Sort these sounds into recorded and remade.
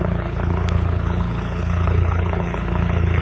remade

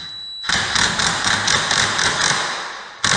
recorded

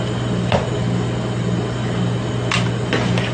recorded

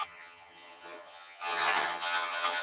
remade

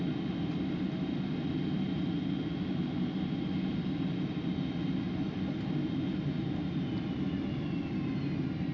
recorded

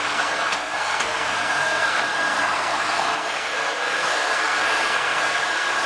remade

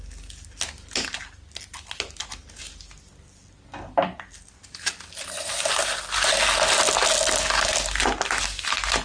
recorded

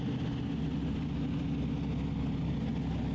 recorded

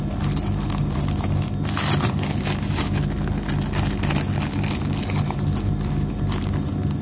recorded